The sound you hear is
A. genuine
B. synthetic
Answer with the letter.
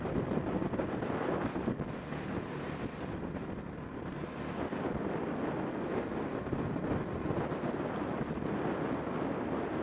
A